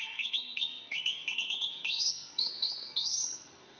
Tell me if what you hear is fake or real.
fake